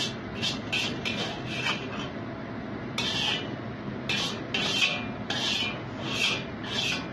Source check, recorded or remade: recorded